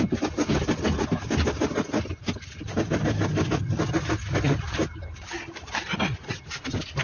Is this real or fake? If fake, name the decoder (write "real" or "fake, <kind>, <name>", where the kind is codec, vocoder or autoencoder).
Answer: real